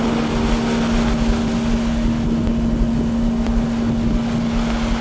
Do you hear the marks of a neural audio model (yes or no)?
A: no